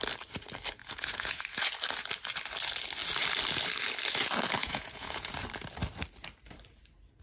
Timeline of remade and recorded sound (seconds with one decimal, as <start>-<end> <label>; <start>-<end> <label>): 0.0-0.8 recorded; 0.8-1.4 remade; 1.4-4.6 recorded; 4.6-5.3 remade; 5.3-7.2 recorded